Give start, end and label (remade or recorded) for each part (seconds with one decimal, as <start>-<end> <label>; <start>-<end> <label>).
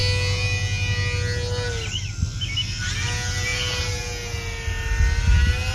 0.0-5.7 recorded